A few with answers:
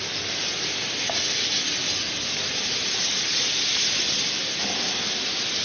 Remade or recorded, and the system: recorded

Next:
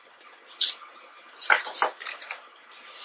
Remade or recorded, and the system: recorded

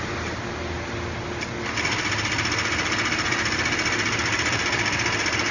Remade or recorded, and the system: recorded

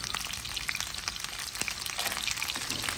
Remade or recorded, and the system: recorded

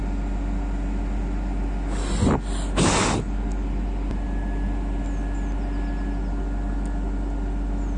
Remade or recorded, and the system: recorded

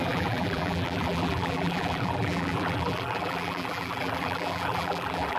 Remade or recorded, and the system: remade, vocoder, BigVGAN v2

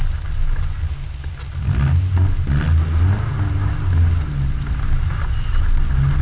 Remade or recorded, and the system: recorded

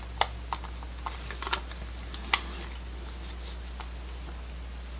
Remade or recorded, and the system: recorded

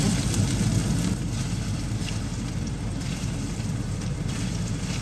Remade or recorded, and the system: recorded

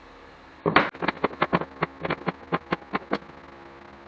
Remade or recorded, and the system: recorded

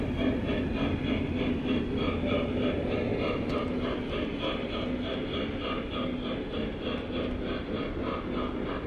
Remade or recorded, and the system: recorded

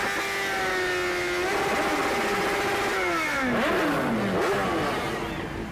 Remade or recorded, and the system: recorded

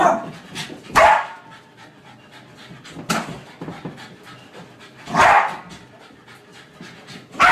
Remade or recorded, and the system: remade, vocoder, BigVGAN v2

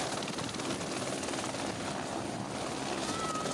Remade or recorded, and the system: recorded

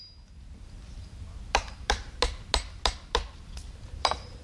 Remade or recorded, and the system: recorded